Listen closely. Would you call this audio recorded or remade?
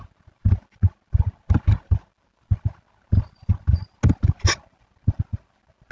recorded